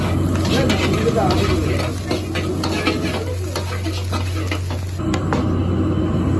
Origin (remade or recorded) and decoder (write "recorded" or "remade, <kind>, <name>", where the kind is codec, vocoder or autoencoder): recorded